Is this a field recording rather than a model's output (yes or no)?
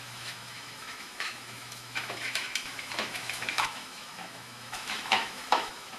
no